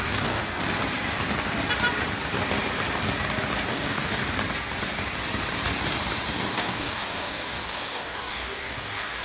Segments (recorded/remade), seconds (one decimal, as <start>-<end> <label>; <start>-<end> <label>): 0.0-0.4 remade; 0.4-3.7 recorded; 3.7-4.2 remade; 4.2-6.5 recorded; 6.5-9.2 remade